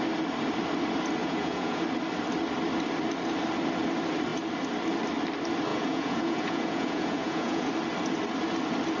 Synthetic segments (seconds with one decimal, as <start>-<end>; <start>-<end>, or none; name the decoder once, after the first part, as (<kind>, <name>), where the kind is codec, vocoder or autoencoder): 1.2-1.8 (vocoder, Vocos); 5.7-7.7